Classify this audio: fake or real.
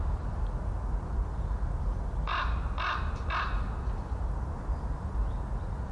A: real